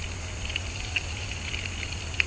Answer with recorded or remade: recorded